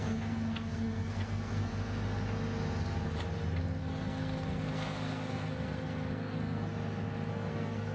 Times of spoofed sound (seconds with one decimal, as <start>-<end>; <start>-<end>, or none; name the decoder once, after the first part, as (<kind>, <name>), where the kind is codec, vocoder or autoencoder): 0.0-1.7 (codec, SNAC); 3.8-6.7; 7.3-7.9